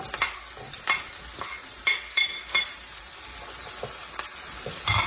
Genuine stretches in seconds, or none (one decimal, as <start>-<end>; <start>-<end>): 0.0-5.1